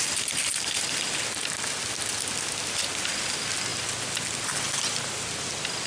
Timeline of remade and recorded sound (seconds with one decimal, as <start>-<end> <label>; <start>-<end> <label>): 0.0-5.9 recorded